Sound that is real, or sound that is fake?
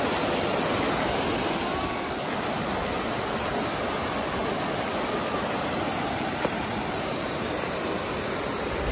real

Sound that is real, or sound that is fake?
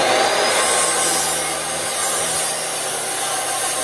real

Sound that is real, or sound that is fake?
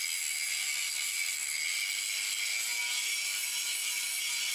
real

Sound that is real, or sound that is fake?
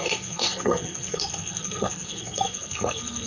fake